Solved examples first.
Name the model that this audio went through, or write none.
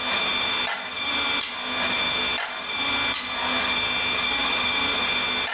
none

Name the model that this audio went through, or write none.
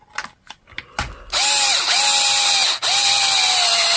none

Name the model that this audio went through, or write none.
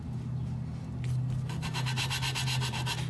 none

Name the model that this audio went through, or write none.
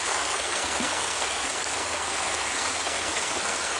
codec, SNAC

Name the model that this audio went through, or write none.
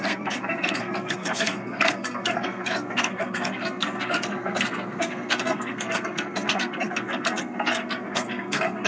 codec, SNAC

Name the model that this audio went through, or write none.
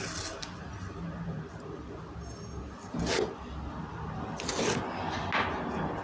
none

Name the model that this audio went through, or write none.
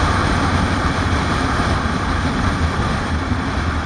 none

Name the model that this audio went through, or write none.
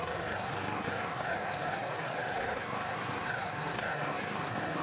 codec, SNAC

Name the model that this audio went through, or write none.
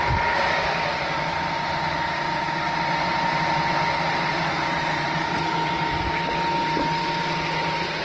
none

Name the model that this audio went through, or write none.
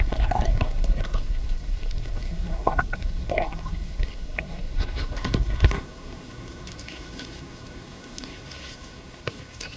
codec, SNAC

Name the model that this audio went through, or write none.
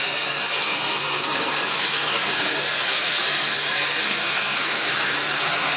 codec, SNAC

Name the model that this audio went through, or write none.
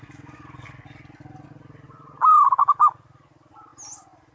none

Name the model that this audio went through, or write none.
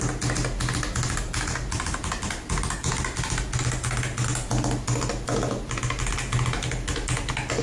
none